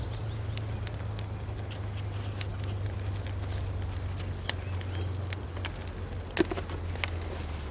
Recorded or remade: recorded